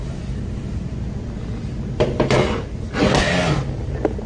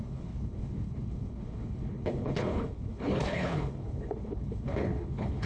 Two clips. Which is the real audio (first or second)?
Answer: first